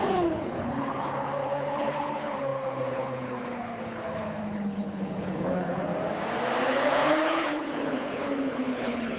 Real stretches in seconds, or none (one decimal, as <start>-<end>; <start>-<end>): 5.9-6.6